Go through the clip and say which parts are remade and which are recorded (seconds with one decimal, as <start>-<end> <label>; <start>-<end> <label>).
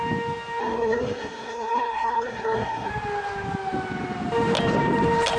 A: 0.0-0.6 recorded; 0.6-2.9 remade; 2.9-5.4 recorded